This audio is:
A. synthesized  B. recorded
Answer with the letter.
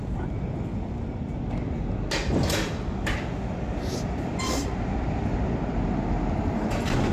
B